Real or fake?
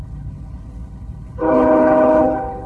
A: fake